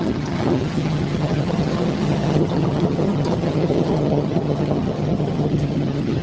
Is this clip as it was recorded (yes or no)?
no